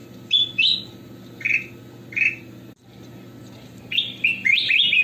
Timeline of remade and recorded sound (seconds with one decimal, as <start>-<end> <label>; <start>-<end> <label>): 0.0-5.0 recorded

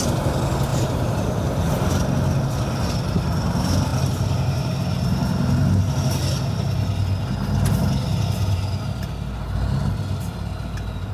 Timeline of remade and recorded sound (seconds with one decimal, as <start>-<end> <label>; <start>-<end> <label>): 0.0-0.7 recorded; 0.7-1.7 remade; 1.7-3.9 recorded; 3.9-5.8 remade; 5.8-8.1 recorded; 8.1-9.1 remade; 9.1-11.1 recorded

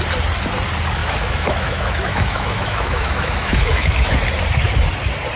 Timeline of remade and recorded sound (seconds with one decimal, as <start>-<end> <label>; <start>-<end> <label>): 0.0-1.0 recorded; 1.0-4.2 remade; 4.2-5.4 recorded

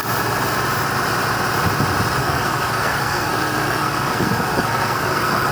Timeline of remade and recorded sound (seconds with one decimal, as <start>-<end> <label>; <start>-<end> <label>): 0.0-2.2 recorded; 2.2-5.5 remade